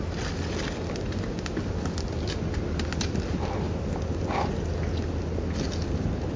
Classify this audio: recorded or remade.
recorded